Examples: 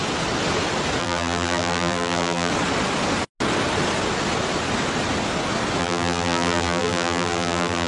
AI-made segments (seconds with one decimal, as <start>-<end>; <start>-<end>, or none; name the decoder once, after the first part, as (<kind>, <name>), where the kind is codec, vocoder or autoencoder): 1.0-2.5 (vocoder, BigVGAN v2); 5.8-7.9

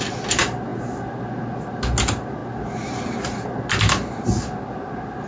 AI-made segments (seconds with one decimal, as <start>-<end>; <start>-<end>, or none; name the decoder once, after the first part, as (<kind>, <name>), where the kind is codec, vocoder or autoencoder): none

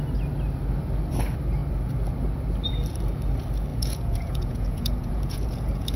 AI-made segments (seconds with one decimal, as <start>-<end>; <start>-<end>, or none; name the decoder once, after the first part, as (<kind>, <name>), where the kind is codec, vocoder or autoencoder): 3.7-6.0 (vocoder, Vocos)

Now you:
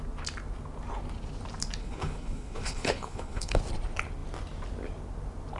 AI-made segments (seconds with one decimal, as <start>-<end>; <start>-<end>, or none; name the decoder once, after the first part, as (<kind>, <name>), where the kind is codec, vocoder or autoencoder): 1.8-3.6 (codec, HILCodec)

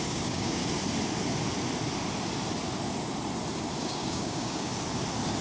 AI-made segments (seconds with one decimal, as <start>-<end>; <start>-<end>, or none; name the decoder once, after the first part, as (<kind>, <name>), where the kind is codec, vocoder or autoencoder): 0.0-0.6 (codec, DAC); 3.8-4.7

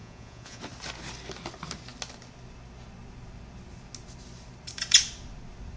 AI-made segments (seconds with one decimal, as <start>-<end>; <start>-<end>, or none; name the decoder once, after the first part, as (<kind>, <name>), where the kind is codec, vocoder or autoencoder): 0.0-0.6 (vocoder, Vocos)